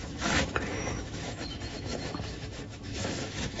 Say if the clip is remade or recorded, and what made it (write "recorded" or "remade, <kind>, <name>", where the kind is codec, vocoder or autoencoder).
remade, autoencoder, DAC-VAE